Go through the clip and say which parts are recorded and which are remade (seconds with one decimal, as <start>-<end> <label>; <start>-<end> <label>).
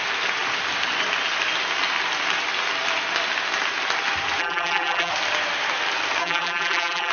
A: 0.0-4.4 recorded; 4.4-5.1 remade; 5.1-6.2 recorded; 6.2-7.1 remade